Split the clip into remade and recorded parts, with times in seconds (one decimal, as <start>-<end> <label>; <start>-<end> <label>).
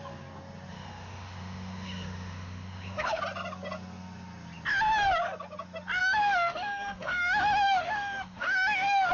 0.0-0.7 recorded; 0.7-3.2 remade; 3.2-6.0 recorded; 6.0-9.1 remade